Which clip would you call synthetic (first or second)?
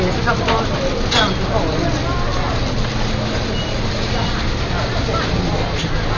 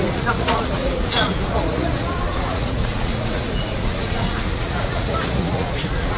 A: second